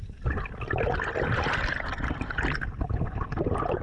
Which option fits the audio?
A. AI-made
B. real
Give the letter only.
B